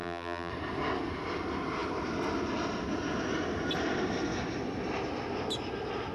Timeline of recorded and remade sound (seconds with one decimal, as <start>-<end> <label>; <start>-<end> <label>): 0.0-0.5 remade; 0.5-6.1 recorded

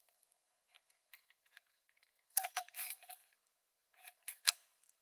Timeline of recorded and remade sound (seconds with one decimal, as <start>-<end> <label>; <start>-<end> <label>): 0.0-5.0 remade